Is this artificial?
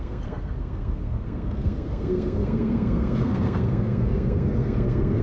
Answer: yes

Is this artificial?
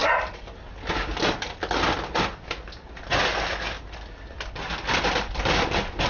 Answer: no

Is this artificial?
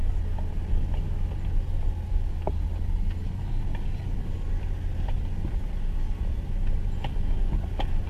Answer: no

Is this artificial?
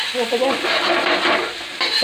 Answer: no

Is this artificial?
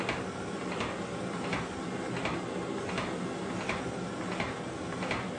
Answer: no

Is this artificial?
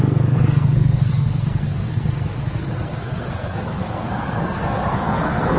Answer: yes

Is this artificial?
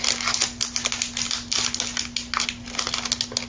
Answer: no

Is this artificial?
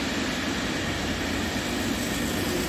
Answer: no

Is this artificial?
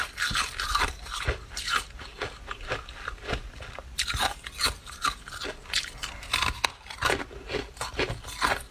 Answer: no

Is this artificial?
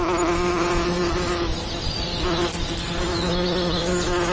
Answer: no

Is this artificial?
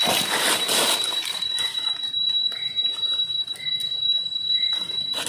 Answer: no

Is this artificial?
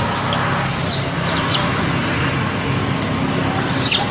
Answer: no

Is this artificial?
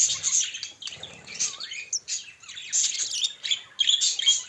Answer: no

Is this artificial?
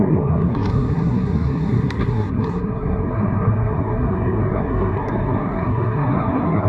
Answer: yes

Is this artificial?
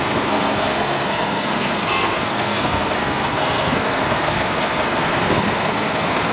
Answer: yes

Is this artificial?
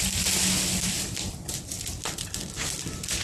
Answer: no